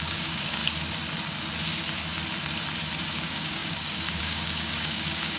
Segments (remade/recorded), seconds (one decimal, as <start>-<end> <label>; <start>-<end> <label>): 0.0-0.6 remade; 0.6-3.1 recorded; 3.1-5.4 remade